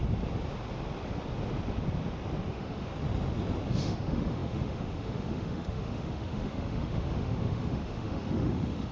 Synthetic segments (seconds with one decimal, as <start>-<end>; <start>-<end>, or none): 2.5-2.9; 3.7-8.9